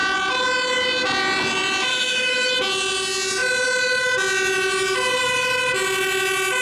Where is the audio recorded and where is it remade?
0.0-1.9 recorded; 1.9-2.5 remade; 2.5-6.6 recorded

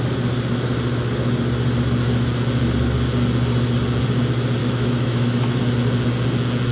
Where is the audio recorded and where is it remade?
0.0-4.6 recorded; 4.6-5.6 remade; 5.6-6.7 recorded

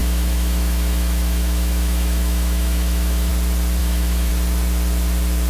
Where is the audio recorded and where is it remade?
0.0-3.3 remade; 3.3-3.8 recorded; 3.8-4.3 remade; 4.3-5.5 recorded

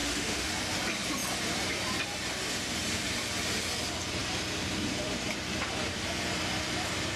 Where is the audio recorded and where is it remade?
0.0-0.5 remade; 0.5-7.2 recorded

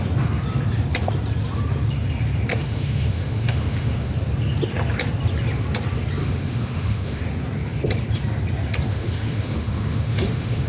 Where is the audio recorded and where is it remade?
0.0-2.5 recorded; 2.5-4.1 remade; 4.1-6.2 recorded; 6.2-7.2 remade; 7.2-8.9 recorded; 8.9-10.7 remade